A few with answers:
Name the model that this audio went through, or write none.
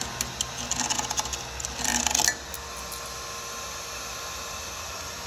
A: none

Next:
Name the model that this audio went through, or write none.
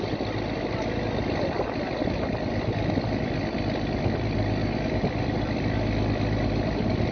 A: vocoder, BigVGAN v2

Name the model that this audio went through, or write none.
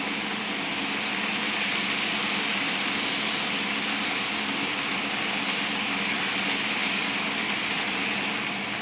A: none